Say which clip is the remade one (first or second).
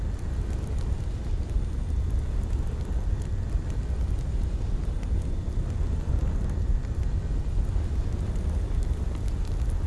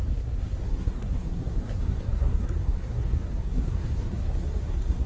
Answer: second